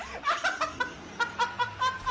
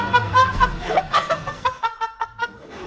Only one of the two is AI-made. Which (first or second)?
second